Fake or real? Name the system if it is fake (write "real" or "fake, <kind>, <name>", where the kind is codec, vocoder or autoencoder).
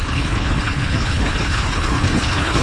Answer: fake, codec, HILCodec